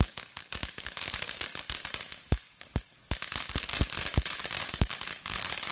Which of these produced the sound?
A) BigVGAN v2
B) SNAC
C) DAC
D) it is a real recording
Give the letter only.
C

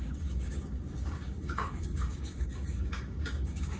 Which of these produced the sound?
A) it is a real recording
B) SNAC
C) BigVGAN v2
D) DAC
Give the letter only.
D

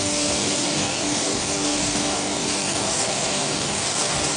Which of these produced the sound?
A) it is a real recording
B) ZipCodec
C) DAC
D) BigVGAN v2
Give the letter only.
C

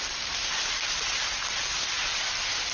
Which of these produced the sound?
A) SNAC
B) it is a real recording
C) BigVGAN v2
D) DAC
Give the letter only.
B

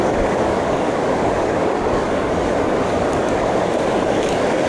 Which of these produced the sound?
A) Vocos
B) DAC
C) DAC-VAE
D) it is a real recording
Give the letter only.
B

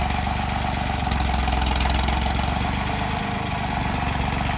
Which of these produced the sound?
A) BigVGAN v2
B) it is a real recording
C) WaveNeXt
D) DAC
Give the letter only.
B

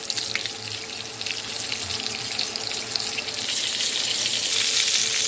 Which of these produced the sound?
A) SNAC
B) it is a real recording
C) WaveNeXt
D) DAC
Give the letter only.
B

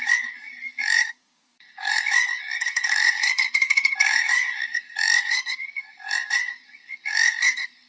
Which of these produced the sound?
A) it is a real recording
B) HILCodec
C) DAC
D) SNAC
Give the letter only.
C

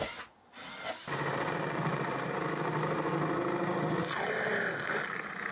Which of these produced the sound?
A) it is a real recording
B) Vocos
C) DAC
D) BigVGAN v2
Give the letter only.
A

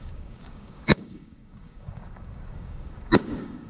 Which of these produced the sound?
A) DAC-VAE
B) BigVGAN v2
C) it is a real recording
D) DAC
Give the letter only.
D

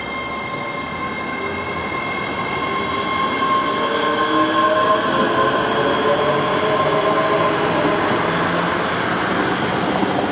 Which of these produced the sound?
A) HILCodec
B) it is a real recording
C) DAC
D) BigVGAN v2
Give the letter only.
B